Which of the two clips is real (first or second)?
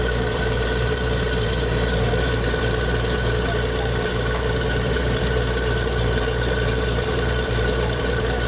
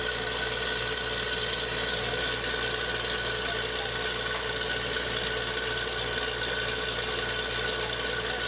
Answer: second